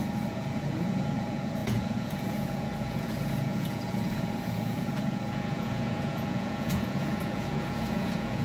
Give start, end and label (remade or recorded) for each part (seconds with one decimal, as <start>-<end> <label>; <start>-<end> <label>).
0.0-8.4 remade